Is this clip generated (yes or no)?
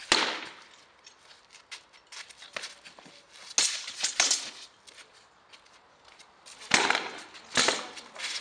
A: no